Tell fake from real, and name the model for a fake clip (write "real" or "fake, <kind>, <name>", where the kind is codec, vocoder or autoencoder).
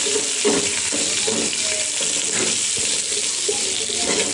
real